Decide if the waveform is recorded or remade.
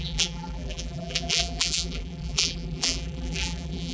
remade